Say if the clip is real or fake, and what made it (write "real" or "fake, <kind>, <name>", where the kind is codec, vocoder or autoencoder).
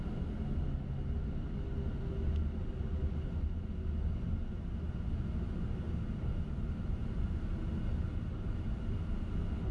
real